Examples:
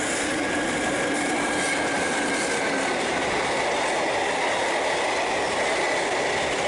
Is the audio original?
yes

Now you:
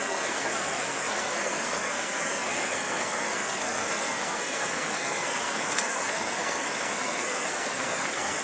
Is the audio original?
no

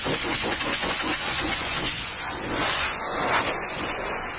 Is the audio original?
no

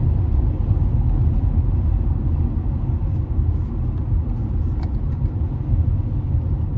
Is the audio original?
yes